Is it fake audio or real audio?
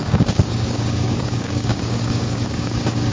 fake